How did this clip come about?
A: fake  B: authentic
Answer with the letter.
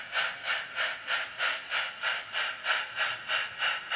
B